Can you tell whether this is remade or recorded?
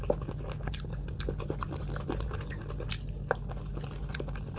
recorded